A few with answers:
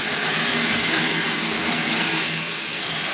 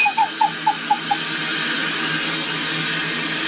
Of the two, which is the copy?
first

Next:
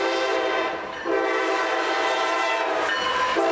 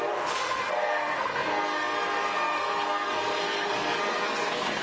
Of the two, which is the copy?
second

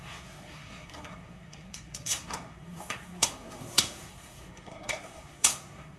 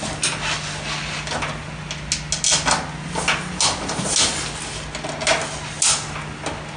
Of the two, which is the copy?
first